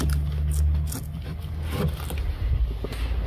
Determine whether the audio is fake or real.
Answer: real